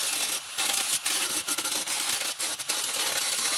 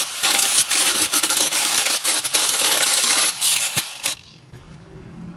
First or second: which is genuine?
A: first